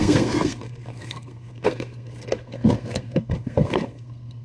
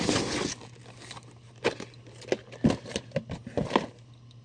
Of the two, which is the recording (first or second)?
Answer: second